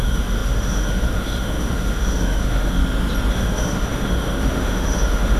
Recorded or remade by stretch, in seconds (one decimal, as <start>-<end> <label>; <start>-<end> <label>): 0.0-2.8 remade; 2.8-3.3 recorded; 3.3-5.4 remade

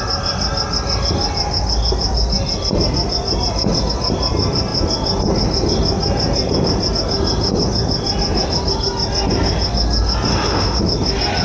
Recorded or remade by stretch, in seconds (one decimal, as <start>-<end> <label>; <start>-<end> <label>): 0.0-10.3 recorded; 10.3-10.8 remade; 10.8-11.4 recorded

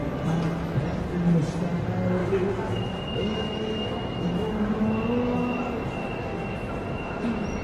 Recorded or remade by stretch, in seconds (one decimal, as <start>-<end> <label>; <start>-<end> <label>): 0.0-2.2 recorded; 2.2-4.8 remade; 4.8-7.6 recorded